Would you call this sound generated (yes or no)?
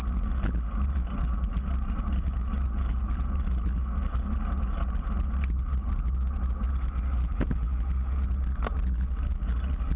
no